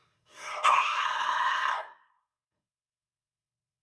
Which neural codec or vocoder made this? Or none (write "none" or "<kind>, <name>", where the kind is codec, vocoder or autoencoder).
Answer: codec, SNAC